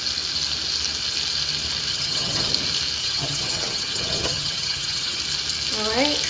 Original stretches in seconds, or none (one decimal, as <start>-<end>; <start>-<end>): 0.0-1.9; 2.5-3.0; 5.2-6.3